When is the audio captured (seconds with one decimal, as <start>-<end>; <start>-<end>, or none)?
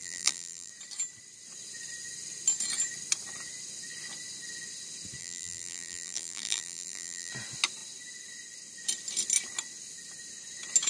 0.7-5.2; 7.3-10.9